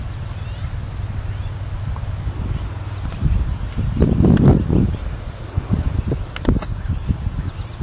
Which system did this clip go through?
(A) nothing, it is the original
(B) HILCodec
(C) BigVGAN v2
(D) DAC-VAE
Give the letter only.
A